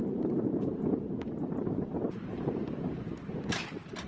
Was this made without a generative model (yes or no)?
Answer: no